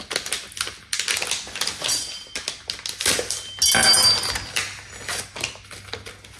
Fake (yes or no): no